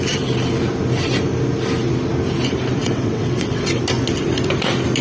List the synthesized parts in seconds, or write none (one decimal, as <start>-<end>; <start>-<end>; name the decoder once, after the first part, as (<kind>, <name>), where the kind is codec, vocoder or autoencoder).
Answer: 2.8-3.8 (vocoder, WaveNeXt)